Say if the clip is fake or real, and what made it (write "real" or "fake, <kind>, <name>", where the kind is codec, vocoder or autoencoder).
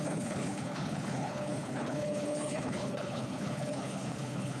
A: fake, codec, HILCodec